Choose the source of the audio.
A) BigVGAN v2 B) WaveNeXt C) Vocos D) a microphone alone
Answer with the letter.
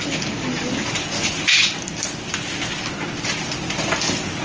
D